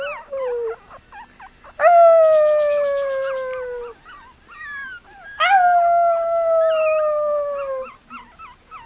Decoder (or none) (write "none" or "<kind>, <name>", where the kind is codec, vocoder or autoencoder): none